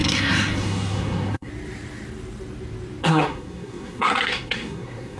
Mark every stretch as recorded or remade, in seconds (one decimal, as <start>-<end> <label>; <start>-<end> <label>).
0.0-1.5 remade; 1.5-3.0 recorded; 3.0-5.2 remade